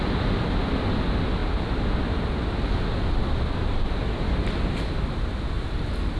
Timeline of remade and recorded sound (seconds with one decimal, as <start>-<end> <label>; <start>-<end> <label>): 0.0-6.2 recorded